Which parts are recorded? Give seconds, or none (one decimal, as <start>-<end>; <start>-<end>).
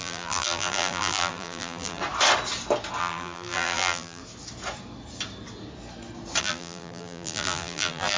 2.0-3.0; 4.2-6.4